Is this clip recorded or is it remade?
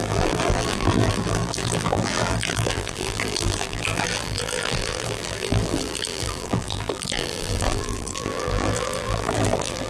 remade